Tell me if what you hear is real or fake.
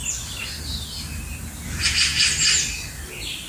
real